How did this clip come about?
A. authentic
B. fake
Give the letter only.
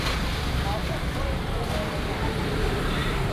B